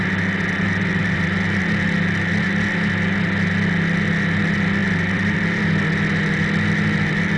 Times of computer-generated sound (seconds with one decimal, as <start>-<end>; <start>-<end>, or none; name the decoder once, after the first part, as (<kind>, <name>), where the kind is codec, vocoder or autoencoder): 1.0-1.6 (vocoder, BigVGAN v2); 4.8-5.6